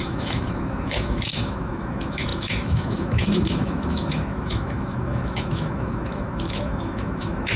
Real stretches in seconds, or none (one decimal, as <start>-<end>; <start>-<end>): none

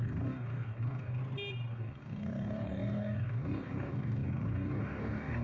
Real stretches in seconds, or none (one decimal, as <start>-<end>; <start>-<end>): 1.2-1.7